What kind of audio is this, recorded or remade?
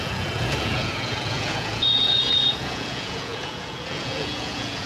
remade